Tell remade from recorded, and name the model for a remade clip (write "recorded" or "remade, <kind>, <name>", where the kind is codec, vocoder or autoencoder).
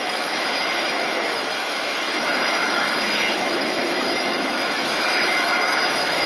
remade, autoencoder, DAC-VAE